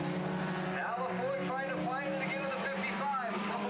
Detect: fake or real real